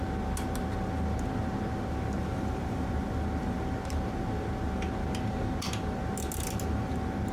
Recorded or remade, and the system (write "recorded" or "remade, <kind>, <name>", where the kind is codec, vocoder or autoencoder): recorded